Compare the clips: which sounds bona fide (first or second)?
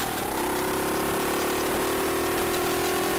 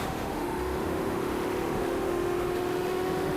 first